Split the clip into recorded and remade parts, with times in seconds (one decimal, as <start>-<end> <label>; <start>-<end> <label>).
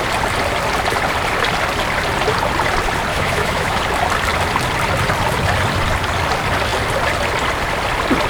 0.0-3.1 recorded; 3.1-3.8 remade; 3.8-8.3 recorded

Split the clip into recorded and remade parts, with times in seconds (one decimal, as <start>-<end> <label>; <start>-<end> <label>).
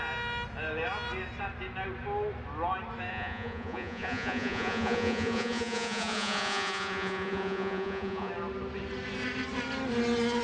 0.0-3.1 recorded; 3.1-8.3 remade; 8.3-10.4 recorded